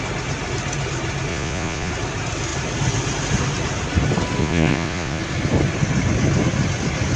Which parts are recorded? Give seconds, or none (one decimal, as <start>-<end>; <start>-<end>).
0.0-1.3; 1.9-4.4; 5.2-7.2